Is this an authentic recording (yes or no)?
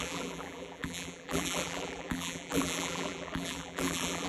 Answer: no